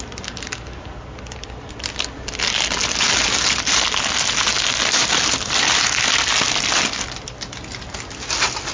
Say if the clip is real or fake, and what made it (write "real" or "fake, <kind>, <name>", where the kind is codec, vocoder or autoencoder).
real